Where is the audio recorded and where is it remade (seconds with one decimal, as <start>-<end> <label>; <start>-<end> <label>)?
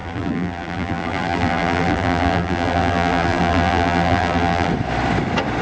0.0-4.7 remade; 4.7-5.6 recorded